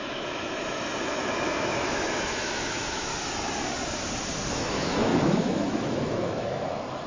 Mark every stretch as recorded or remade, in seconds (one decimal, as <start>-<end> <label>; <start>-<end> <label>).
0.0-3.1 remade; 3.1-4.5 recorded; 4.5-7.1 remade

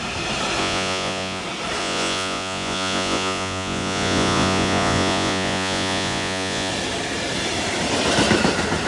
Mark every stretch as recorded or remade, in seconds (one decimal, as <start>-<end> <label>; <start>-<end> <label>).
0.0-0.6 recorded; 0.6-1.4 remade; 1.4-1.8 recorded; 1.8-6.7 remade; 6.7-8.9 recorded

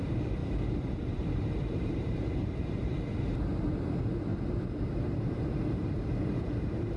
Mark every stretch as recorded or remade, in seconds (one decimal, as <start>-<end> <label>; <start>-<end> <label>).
0.0-0.4 recorded; 0.4-3.0 remade; 3.0-4.3 recorded; 4.3-7.0 remade

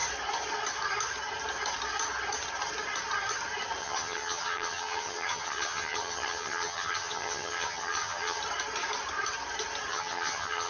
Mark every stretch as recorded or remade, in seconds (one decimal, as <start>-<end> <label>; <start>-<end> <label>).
0.0-3.8 recorded; 3.8-8.4 remade; 8.4-9.9 recorded; 9.9-10.7 remade

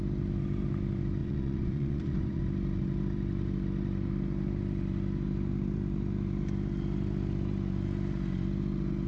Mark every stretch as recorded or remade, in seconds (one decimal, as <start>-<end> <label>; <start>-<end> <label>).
0.0-1.2 recorded; 1.2-2.4 remade; 2.4-9.1 recorded

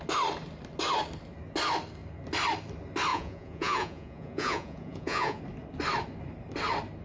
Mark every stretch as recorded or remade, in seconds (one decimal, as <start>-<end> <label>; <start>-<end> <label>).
0.0-3.1 recorded; 3.1-5.4 remade; 5.4-7.0 recorded

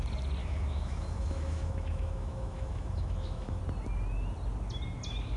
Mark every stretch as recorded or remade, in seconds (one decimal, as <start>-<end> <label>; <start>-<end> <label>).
0.0-0.4 recorded; 0.4-3.6 remade; 3.6-5.4 recorded

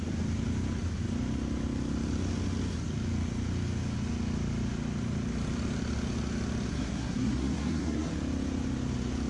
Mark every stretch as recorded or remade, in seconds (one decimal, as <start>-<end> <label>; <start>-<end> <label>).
0.0-6.7 recorded; 6.7-8.1 remade; 8.1-9.3 recorded